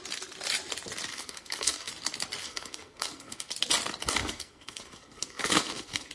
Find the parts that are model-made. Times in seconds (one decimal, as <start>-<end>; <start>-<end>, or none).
1.1-1.9; 2.4-3.5; 4.2-6.1